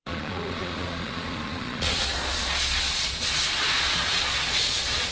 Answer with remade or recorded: remade